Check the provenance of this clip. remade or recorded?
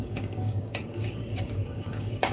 remade